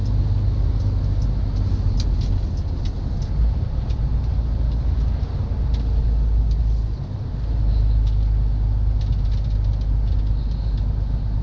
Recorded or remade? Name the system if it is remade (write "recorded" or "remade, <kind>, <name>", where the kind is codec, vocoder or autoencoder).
recorded